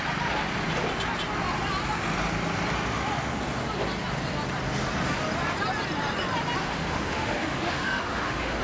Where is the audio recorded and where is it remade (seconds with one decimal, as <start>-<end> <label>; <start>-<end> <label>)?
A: 0.0-6.6 recorded; 6.6-8.6 remade